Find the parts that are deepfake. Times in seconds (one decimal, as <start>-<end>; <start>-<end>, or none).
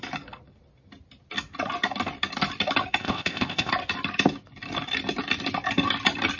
3.0-3.7